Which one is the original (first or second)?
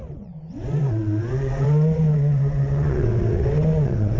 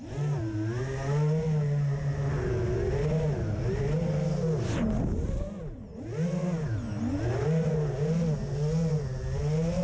second